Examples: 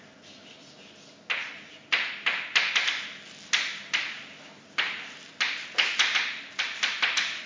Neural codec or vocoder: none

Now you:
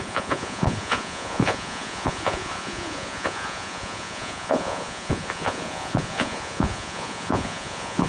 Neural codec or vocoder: vocoder, Vocos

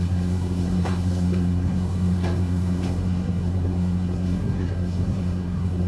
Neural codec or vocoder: codec, SNAC